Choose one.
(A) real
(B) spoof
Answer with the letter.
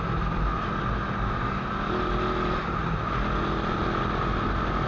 A